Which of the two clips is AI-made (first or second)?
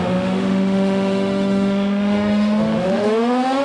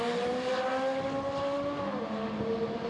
first